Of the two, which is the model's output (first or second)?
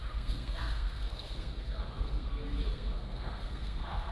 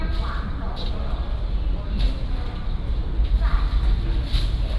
first